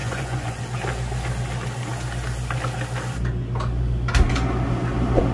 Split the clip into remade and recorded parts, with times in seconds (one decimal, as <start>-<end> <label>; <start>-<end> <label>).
0.0-0.6 remade; 0.6-5.3 recorded